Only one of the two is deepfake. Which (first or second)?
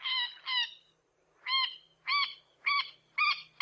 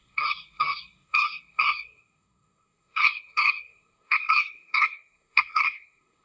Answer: second